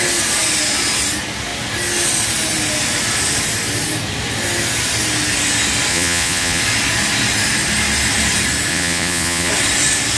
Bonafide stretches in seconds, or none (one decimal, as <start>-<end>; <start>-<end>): 0.0-5.9; 6.6-8.7; 9.5-10.2